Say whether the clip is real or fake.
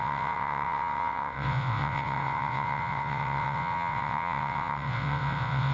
fake